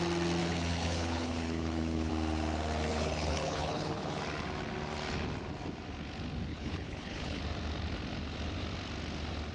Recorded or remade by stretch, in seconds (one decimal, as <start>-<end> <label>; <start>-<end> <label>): 0.0-0.4 recorded; 0.4-2.1 remade; 2.1-2.9 recorded; 2.9-4.2 remade; 4.2-6.5 recorded; 6.5-7.4 remade; 7.4-9.5 recorded